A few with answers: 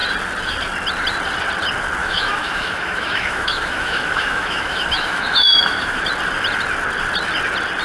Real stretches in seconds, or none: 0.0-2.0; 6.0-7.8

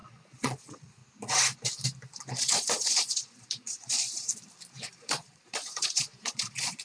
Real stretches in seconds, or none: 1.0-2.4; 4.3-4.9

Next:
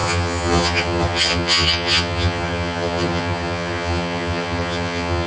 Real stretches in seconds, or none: none

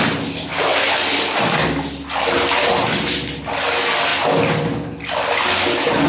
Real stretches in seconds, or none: 0.0-6.1

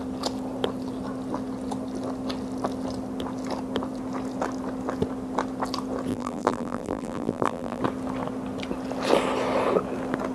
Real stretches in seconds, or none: 0.0-6.1; 7.8-10.3